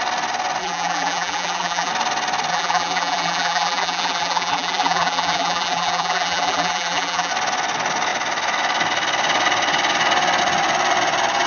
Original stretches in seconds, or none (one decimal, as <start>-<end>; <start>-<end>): 0.0-0.6; 1.9-2.5; 7.3-11.5